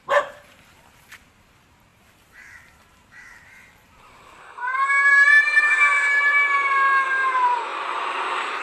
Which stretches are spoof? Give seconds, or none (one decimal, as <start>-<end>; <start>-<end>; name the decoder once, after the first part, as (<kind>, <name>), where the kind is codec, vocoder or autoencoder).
0.0-8.6 (vocoder, BigVGAN v2)